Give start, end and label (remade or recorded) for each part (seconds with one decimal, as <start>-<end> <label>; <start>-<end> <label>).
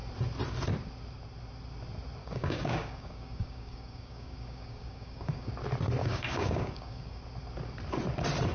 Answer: 0.0-2.2 recorded; 2.2-5.5 remade; 5.5-6.0 recorded; 6.0-7.2 remade; 7.2-8.5 recorded